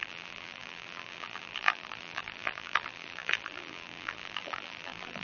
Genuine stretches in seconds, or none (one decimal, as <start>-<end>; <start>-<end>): none